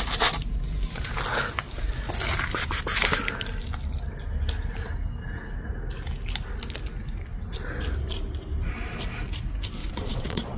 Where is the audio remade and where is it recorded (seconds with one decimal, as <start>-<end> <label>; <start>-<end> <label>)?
0.0-9.8 recorded; 9.8-10.6 remade